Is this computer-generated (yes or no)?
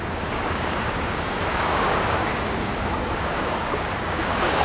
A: yes